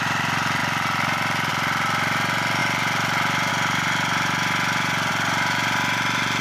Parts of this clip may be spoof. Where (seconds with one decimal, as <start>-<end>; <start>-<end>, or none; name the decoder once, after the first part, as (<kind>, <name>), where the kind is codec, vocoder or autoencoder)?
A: none